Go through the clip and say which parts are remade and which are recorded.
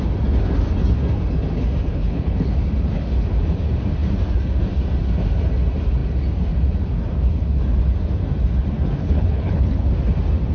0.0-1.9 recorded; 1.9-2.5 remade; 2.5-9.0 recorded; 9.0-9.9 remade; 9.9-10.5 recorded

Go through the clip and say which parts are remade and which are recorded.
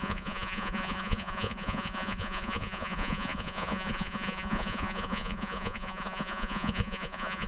0.0-7.5 remade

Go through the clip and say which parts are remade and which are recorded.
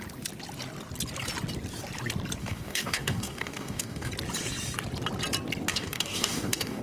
0.0-2.4 recorded; 2.4-4.1 remade; 4.1-5.7 recorded; 5.7-6.8 remade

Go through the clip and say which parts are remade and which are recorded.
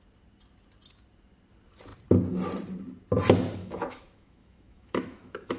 0.0-3.6 recorded; 3.6-5.6 remade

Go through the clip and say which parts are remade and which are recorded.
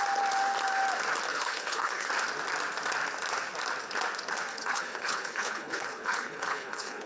0.0-1.3 recorded; 1.3-2.1 remade; 2.1-4.5 recorded; 4.5-7.1 remade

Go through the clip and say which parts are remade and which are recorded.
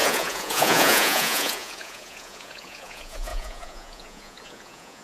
0.0-5.0 remade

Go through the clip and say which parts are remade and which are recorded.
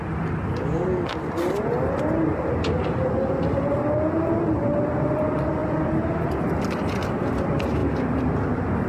0.0-8.9 recorded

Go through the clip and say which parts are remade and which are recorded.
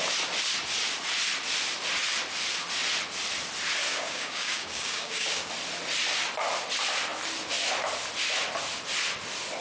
0.0-3.9 recorded; 3.9-5.5 remade; 5.5-9.6 recorded